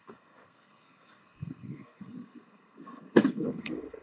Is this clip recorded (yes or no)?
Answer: no